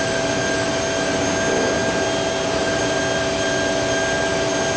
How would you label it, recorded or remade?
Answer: recorded